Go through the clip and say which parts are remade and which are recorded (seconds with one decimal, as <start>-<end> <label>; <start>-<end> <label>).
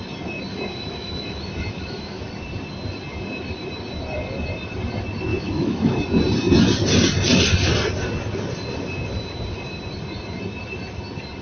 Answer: 0.0-0.5 recorded; 0.5-2.3 remade; 2.3-5.3 recorded; 5.3-5.9 remade; 5.9-11.4 recorded